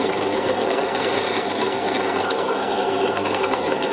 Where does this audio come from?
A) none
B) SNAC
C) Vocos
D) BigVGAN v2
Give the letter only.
B